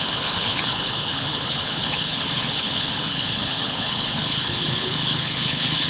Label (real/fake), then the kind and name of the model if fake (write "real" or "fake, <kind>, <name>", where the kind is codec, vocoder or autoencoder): fake, codec, HILCodec